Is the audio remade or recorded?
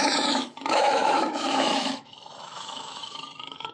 remade